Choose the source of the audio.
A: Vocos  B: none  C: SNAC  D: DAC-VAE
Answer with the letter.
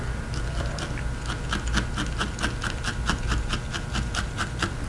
B